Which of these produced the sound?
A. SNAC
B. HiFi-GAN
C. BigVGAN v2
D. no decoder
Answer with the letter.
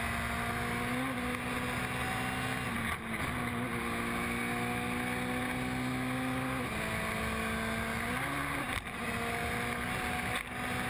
D